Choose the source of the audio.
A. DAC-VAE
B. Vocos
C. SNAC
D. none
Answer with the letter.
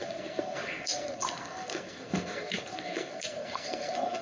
C